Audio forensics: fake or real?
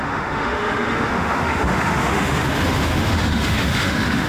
fake